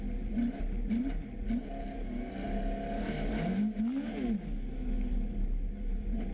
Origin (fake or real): real